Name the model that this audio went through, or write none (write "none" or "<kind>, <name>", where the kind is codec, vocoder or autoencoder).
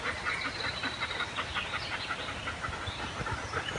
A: none